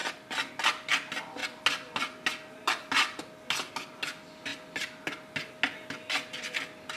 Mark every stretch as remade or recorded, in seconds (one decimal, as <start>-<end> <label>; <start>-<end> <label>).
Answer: 0.0-7.0 recorded